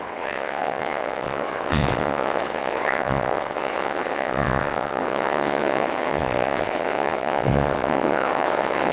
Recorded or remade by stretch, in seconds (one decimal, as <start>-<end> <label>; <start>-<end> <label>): 0.0-8.9 remade